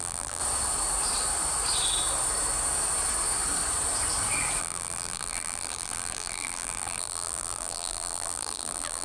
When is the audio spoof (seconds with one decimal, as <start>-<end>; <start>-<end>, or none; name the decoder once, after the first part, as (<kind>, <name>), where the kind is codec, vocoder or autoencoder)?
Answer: 0.0-0.4 (vocoder, BigVGAN v2); 4.6-9.0